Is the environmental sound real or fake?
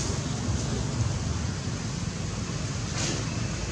real